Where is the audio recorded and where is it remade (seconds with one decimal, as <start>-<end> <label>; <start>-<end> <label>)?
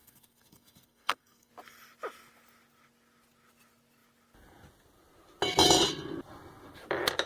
0.0-1.5 remade; 1.5-7.3 recorded